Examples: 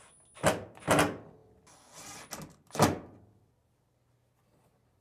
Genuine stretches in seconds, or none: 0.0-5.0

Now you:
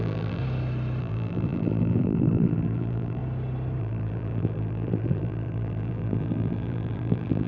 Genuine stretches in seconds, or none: 0.4-1.0; 3.2-3.8

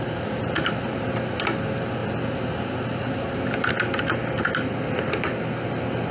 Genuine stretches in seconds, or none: 2.0-6.1